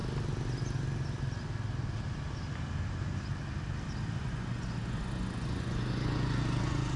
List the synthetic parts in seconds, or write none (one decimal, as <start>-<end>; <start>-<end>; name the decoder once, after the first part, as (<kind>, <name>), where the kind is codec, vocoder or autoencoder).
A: 4.2-7.0 (vocoder, Vocos)